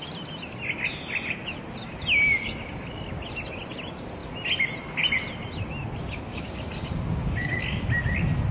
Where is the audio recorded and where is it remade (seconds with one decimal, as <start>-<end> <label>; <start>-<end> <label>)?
0.0-6.3 recorded; 6.3-7.8 remade; 7.8-8.5 recorded